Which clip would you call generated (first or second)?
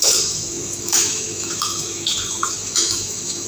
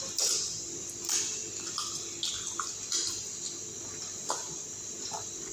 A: first